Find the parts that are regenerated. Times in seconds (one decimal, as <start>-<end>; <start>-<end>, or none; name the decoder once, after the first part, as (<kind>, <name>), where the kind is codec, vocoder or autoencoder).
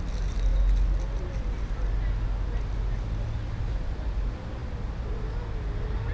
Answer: none